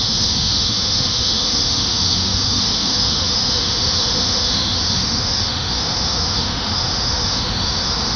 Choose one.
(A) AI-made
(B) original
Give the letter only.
A